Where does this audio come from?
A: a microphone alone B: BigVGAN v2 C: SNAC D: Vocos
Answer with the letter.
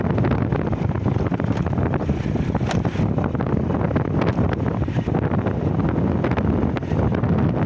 A